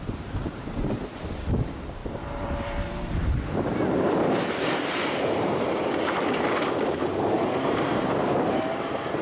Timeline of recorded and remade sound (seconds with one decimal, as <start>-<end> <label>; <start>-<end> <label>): 0.0-3.7 remade; 3.7-4.6 recorded; 4.6-9.2 remade